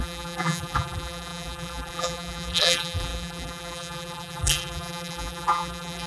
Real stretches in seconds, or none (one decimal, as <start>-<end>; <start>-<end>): none